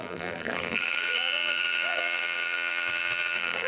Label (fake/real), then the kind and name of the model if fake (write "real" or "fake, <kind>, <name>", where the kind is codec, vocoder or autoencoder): fake, vocoder, BigVGAN v2